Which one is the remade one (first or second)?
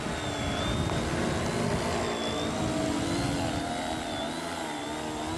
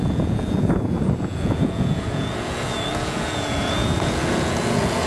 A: second